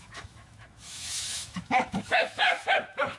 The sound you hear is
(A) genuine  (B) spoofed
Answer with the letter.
B